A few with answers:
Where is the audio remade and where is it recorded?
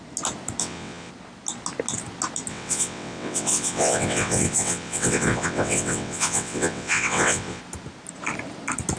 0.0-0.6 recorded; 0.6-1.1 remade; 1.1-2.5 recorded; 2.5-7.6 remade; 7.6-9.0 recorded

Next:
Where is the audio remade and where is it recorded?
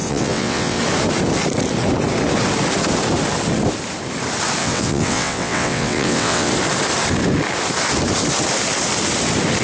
0.0-0.8 remade; 0.8-4.6 recorded; 4.6-6.5 remade; 6.5-9.6 recorded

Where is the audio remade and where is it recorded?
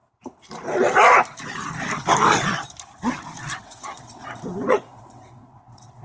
0.0-3.6 recorded; 3.6-4.2 remade; 4.2-4.7 recorded; 4.7-6.0 remade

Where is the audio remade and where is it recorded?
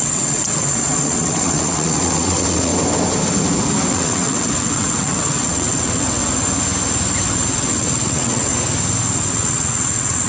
0.0-2.7 remade; 2.7-3.9 recorded; 3.9-6.2 remade; 6.2-7.5 recorded; 7.5-8.5 remade; 8.5-9.3 recorded; 9.3-10.3 remade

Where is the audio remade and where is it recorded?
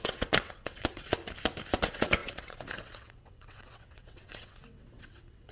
0.0-1.2 remade; 1.2-1.8 recorded; 1.8-5.5 remade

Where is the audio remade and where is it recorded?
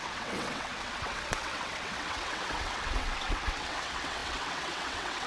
0.0-5.3 remade